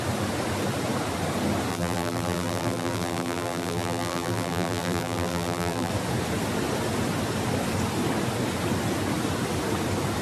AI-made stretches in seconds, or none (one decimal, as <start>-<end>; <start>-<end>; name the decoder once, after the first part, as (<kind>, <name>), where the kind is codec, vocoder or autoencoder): 1.7-5.9 (vocoder, BigVGAN v2)